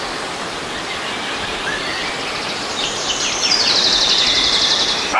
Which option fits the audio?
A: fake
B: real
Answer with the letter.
B